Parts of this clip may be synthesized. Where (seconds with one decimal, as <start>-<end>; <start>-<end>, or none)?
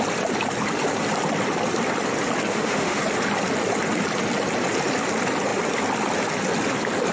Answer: 2.5-3.0